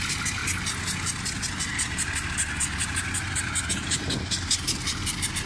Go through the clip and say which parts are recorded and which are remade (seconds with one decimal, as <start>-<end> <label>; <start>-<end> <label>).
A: 0.0-5.5 recorded